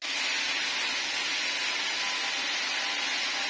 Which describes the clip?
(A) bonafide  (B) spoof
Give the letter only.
A